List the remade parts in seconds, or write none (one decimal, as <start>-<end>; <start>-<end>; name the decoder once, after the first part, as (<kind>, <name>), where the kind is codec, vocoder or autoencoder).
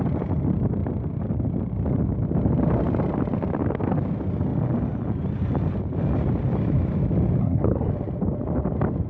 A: 7.4-7.9 (codec, SNAC)